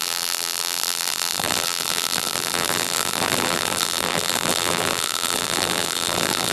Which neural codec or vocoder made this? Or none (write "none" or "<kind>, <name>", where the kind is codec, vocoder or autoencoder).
vocoder, BigVGAN v2